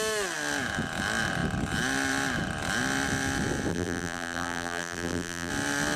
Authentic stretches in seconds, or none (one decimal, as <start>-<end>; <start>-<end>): 0.0-3.7; 5.5-6.0